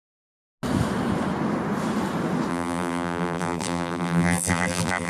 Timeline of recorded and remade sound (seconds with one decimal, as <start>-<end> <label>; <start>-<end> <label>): 0.0-2.5 recorded; 2.5-5.1 remade

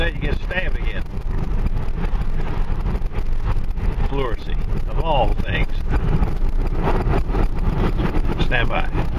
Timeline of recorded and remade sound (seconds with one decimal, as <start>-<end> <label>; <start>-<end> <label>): 0.0-5.3 recorded; 5.3-9.2 remade